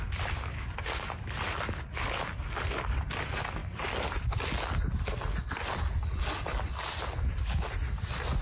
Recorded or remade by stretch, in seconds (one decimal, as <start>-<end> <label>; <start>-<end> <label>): 0.0-0.5 recorded; 0.5-1.1 remade; 1.1-8.4 recorded